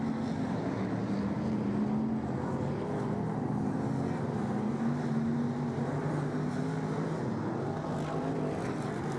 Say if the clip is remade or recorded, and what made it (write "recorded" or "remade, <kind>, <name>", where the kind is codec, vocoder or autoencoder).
recorded